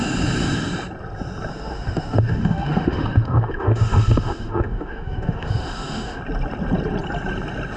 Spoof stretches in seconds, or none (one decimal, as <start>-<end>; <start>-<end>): 1.5-6.2